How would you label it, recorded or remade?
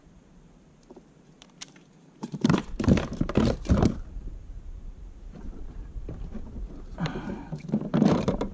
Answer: remade